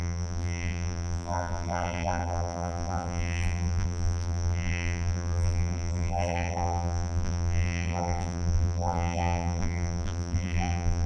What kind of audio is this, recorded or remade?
remade